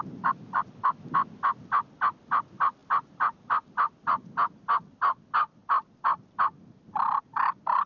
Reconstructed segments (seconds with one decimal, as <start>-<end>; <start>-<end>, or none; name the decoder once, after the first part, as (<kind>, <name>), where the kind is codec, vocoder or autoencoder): none